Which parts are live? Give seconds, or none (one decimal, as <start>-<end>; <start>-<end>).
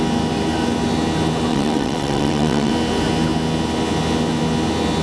0.0-1.5; 2.7-5.0